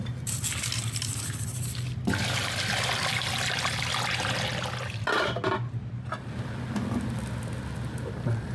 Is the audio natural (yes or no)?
yes